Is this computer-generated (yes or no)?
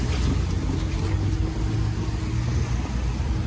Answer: no